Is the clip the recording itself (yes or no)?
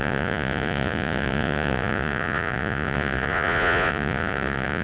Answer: no